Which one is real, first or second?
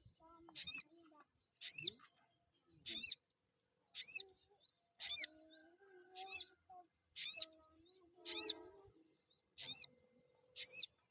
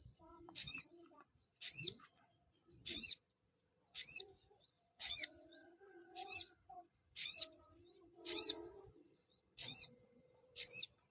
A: first